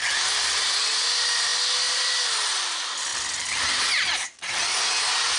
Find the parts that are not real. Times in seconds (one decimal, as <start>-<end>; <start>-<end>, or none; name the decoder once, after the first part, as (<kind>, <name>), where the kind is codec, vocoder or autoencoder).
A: none